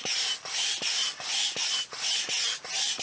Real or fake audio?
real